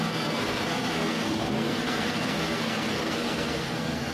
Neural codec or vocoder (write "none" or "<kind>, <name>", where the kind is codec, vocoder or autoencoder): codec, SNAC